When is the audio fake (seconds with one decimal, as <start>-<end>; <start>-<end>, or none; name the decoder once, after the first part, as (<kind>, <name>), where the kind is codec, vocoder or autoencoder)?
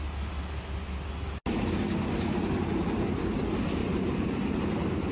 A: 3.8-5.1 (vocoder, BigVGAN v2)